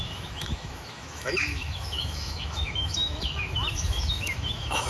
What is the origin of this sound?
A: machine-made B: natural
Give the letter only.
A